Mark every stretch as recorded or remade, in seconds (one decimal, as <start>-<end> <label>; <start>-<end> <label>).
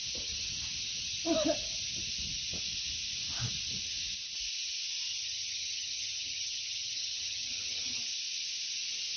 0.0-5.1 recorded; 5.1-8.0 remade; 8.0-9.2 recorded